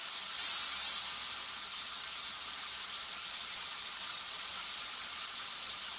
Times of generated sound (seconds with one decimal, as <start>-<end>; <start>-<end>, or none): 2.8-6.0